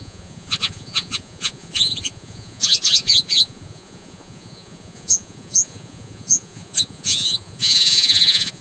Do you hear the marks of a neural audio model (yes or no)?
yes